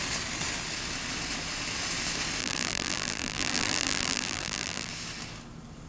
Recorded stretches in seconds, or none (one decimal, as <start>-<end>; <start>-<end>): 0.0-2.4; 4.9-5.9